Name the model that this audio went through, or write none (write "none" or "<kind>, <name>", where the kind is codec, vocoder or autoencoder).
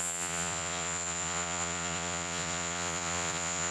vocoder, Vocos